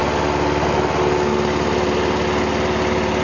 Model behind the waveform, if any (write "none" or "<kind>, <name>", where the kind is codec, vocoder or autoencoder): none